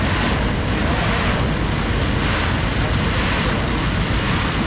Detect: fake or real real